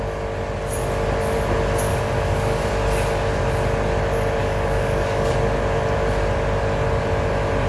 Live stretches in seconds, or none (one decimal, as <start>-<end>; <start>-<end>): 0.0-1.9; 2.7-4.4; 5.3-7.7